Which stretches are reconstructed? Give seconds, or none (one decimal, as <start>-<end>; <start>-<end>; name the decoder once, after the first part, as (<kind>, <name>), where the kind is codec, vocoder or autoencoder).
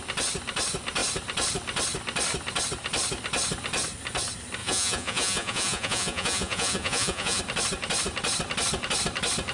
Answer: 4.6-7.4 (vocoder, Vocos)